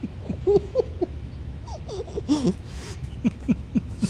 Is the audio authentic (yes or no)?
no